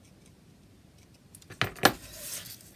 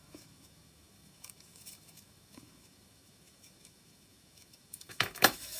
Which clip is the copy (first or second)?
second